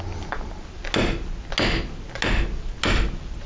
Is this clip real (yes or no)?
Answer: yes